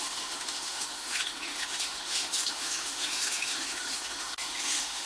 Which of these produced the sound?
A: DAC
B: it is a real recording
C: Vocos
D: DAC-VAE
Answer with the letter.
D